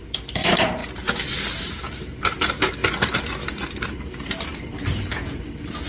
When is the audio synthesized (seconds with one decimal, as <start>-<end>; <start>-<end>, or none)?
0.0-0.8; 1.6-2.8; 3.8-5.9